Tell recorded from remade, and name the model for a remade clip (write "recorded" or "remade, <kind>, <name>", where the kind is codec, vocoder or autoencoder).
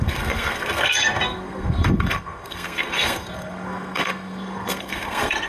remade, codec, SNAC